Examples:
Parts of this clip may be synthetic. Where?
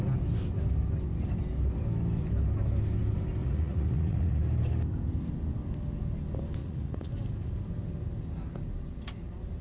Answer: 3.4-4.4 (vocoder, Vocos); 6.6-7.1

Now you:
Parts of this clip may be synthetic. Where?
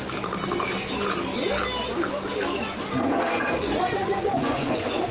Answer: 3.6-5.1 (vocoder, Vocos)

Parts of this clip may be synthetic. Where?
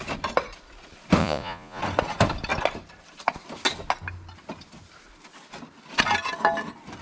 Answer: 1.2-1.8 (vocoder, Vocos)